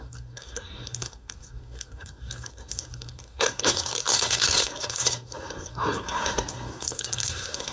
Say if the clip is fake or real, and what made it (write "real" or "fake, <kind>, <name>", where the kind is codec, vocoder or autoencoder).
fake, codec, SNAC